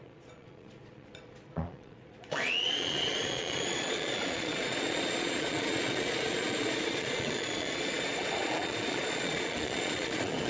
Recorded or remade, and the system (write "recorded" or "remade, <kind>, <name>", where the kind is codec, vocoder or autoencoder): remade, vocoder, Vocos